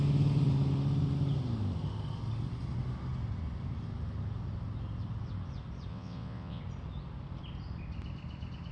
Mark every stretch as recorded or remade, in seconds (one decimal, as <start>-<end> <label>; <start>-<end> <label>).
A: 0.0-5.9 recorded; 5.9-6.6 remade; 6.6-8.7 recorded